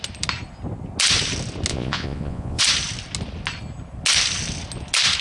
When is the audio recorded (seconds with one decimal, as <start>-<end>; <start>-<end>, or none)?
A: 0.0-1.7; 2.6-5.2